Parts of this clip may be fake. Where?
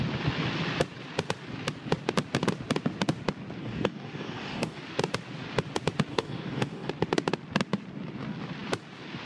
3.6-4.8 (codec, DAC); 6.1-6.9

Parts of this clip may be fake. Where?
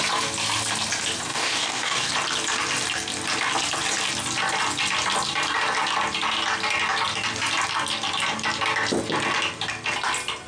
1.3-2.1 (codec, DAC)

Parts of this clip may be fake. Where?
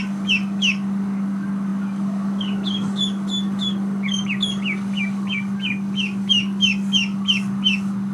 0.0-8.1 (codec, DAC)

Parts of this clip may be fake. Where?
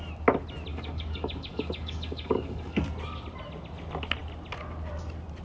0.7-2.8 (codec, DAC)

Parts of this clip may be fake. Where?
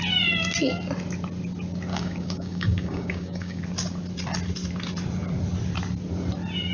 1.9-3.6 (codec, DAC)